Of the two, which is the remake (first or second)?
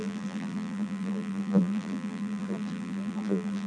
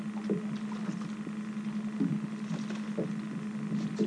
first